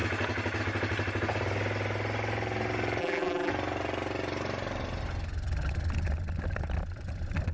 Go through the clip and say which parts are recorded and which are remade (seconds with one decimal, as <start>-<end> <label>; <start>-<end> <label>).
0.0-3.0 recorded; 3.0-3.5 remade; 3.5-7.5 recorded